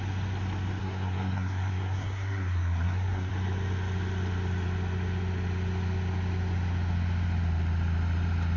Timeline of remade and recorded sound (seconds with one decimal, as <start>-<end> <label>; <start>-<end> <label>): 0.0-0.8 recorded; 0.8-3.3 remade; 3.3-8.6 recorded